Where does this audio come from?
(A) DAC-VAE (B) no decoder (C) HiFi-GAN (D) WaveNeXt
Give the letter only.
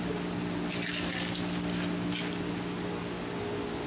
B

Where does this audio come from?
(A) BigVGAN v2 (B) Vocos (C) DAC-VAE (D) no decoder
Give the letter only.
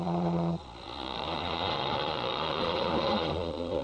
B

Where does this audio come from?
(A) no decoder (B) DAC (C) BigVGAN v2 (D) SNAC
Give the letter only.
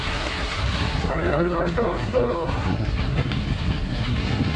D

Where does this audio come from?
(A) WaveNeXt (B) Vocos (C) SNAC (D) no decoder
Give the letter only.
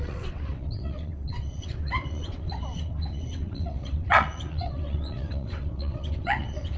A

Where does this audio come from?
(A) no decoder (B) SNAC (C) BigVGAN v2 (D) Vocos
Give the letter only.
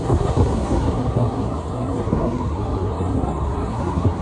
B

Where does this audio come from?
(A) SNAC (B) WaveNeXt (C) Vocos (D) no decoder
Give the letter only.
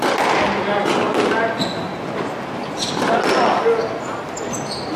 D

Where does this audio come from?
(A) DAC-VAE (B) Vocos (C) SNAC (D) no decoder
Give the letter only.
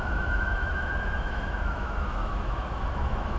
A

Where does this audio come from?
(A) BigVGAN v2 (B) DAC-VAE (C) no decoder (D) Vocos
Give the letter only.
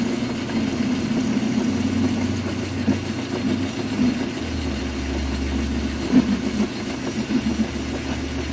C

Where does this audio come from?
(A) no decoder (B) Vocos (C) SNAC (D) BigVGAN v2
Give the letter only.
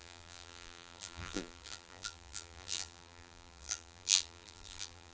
D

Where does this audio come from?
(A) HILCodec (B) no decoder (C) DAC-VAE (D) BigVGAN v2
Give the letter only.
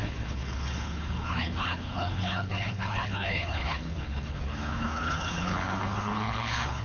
A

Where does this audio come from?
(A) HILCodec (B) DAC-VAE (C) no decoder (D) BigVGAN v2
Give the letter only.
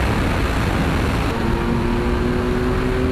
C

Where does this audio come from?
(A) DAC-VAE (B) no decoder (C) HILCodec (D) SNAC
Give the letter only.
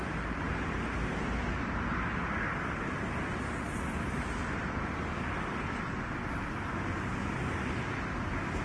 B